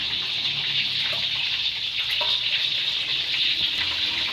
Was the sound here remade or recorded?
remade